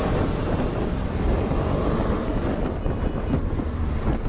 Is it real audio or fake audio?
fake